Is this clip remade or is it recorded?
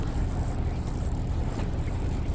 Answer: remade